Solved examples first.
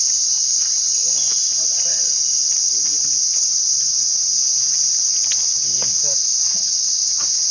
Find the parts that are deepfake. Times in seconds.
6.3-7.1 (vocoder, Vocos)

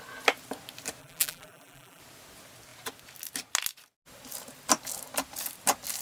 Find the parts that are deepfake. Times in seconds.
1.0-2.0 (vocoder, BigVGAN v2)

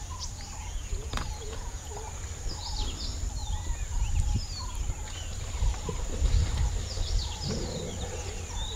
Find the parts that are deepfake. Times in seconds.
0.6-1.9 (vocoder, Vocos)

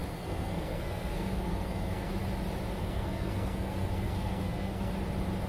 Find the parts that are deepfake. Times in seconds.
0.0-2.1 (codec, SNAC); 2.8-4.9